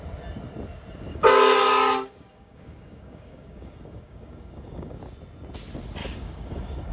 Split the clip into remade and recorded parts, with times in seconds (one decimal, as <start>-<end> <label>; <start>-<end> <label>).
0.0-1.1 recorded; 1.1-5.0 remade; 5.0-6.0 recorded; 6.0-6.9 remade